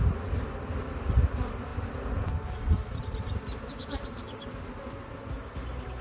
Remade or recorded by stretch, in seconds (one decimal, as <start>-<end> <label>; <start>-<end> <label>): 0.0-6.0 recorded